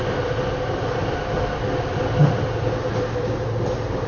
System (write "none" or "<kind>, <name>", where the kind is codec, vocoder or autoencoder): none